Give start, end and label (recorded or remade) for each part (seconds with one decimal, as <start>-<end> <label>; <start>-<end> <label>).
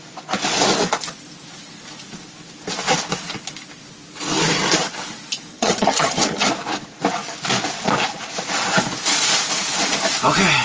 0.0-5.5 recorded; 5.5-6.5 remade; 6.5-10.6 recorded